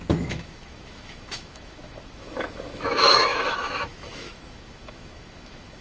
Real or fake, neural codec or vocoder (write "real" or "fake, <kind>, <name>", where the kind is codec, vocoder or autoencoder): fake, autoencoder, DAC-VAE